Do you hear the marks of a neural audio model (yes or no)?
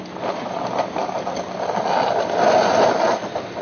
no